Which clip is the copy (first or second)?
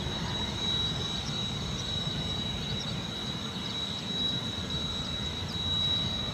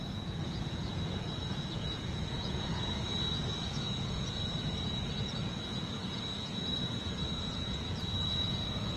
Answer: second